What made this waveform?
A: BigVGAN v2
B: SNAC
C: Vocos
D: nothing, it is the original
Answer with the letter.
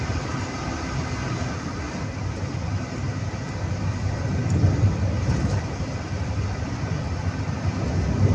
A